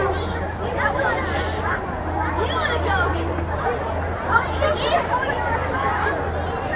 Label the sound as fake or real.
real